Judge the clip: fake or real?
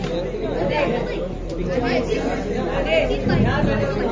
real